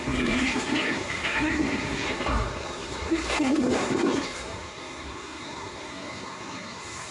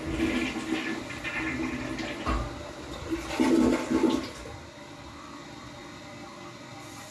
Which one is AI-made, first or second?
first